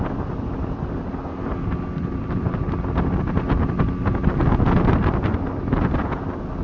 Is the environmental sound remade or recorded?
recorded